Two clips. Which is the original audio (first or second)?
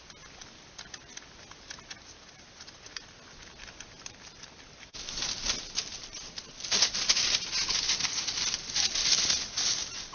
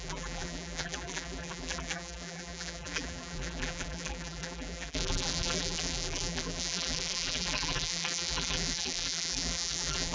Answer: first